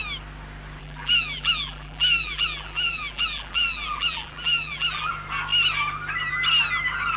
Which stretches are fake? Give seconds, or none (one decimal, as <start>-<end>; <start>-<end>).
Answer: 0.8-5.1